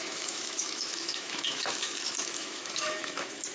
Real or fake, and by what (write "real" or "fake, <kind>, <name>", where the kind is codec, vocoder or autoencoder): fake, autoencoder, DAC-VAE